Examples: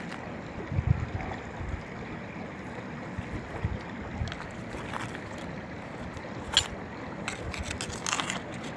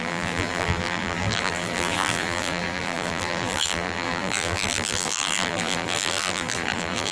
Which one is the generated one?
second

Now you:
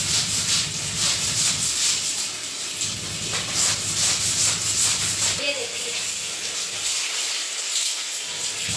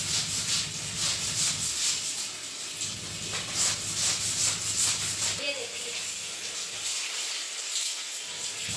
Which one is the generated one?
first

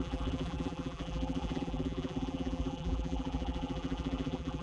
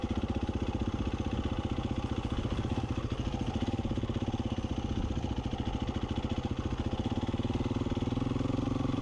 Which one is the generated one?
first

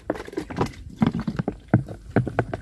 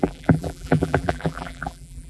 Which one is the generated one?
second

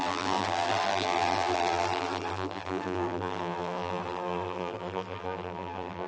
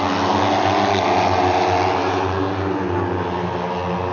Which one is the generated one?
first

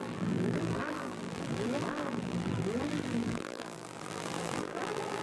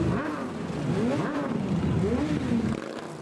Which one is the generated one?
first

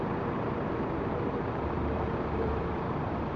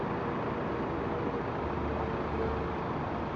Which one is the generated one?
first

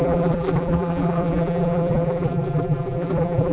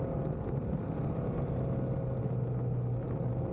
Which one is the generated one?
first